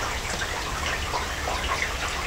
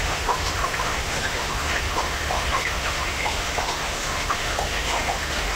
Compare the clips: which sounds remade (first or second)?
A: second